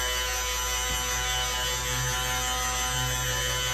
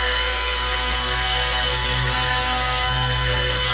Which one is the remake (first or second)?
second